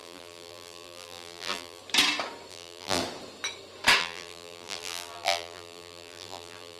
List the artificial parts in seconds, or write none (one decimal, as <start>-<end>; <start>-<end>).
0.0-1.8; 2.5-3.0; 4.0-6.8